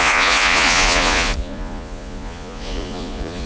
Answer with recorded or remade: remade